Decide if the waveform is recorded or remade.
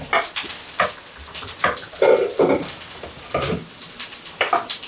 recorded